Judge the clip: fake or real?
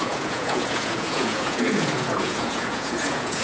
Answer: fake